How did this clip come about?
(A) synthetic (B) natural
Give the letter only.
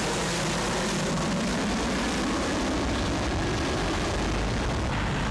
B